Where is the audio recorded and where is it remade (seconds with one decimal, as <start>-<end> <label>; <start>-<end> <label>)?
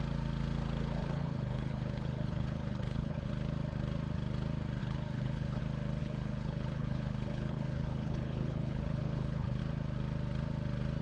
0.0-1.0 recorded; 1.0-3.3 remade; 3.3-4.8 recorded; 4.8-5.6 remade; 5.6-6.0 recorded; 6.0-9.6 remade; 9.6-11.0 recorded